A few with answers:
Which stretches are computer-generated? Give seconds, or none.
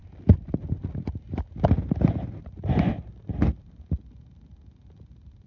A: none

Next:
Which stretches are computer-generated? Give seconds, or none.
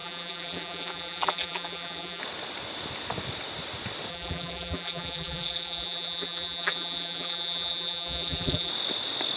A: 0.0-2.2 (vocoder, BigVGAN v2); 4.1-8.7